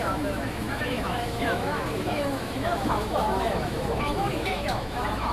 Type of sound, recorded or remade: remade